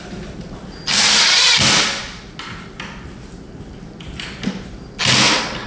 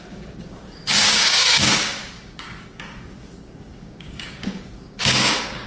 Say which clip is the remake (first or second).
second